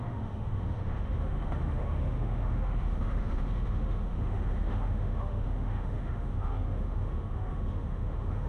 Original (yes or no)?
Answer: no